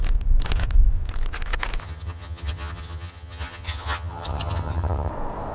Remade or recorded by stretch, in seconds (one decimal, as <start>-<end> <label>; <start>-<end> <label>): 0.0-1.8 recorded; 1.8-5.1 remade; 5.1-5.5 recorded